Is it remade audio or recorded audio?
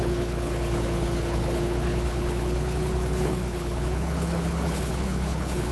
remade